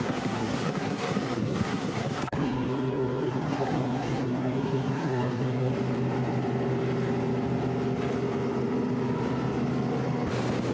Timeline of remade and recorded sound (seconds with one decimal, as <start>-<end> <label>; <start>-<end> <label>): 0.0-5.7 remade; 5.7-10.7 recorded